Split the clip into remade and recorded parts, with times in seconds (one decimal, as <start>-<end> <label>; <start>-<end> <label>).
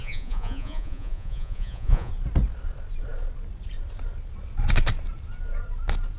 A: 0.0-2.1 remade; 2.1-6.2 recorded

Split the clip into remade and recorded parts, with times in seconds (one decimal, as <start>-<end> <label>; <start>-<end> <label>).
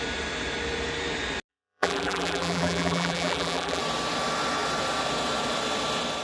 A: 0.0-1.5 recorded; 1.5-3.8 remade; 3.8-6.2 recorded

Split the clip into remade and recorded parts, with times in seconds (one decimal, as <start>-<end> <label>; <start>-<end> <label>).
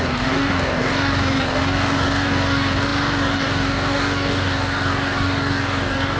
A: 0.0-6.2 remade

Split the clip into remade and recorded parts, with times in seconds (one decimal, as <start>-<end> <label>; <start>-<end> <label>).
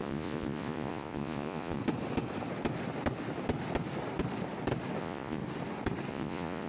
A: 0.0-1.8 remade; 1.8-5.0 recorded; 5.0-5.4 remade; 5.4-6.1 recorded; 6.1-6.7 remade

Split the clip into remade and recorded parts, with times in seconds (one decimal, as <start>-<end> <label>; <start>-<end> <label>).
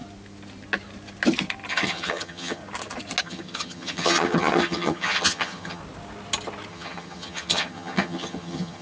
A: 0.0-1.7 recorded; 1.7-2.6 remade; 2.6-3.2 recorded; 3.2-5.8 remade; 5.8-6.7 recorded; 6.7-8.8 remade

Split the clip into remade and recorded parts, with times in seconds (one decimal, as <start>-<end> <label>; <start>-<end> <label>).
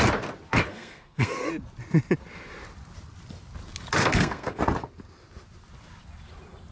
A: 0.0-0.7 recorded; 0.7-1.5 remade; 1.5-4.0 recorded; 4.0-4.6 remade; 4.6-6.7 recorded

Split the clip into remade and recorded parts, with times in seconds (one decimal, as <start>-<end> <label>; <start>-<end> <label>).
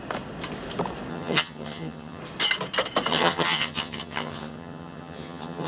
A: 0.0-1.1 recorded; 1.1-2.2 remade; 2.2-3.1 recorded; 3.1-5.7 remade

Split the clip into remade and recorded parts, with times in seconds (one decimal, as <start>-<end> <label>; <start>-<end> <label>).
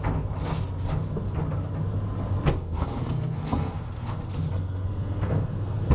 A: 0.0-2.6 recorded; 2.6-5.9 remade